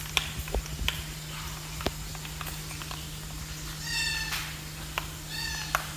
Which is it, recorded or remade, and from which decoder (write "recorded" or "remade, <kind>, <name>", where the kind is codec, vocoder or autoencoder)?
recorded